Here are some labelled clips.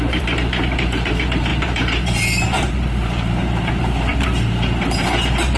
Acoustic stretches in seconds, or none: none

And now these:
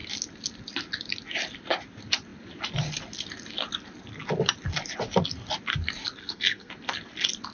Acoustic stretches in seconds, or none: 0.0-6.2; 6.7-7.5

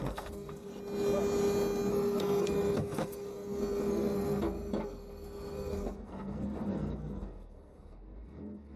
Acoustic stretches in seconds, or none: 0.7-1.9

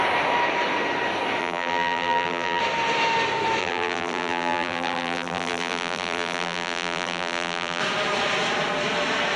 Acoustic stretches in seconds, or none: 0.0-1.4; 2.6-3.6; 7.8-9.4

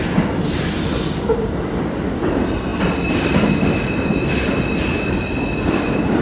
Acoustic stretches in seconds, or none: 0.0-6.2